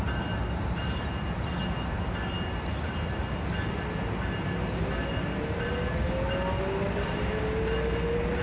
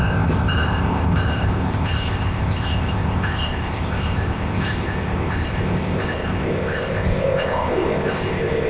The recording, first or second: first